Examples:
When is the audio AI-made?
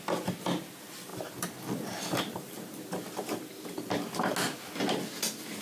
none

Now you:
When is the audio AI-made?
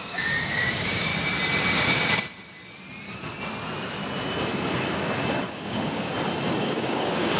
0.0-1.1 (codec, DAC); 5.5-6.1; 6.6-7.4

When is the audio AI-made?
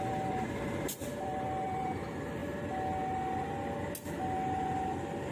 0.0-2.4 (vocoder, BigVGAN v2)